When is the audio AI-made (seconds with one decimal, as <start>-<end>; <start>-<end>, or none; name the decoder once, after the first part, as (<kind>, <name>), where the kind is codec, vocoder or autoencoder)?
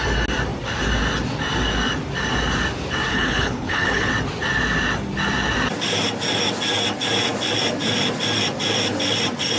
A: 3.1-4.1 (codec, HILCodec)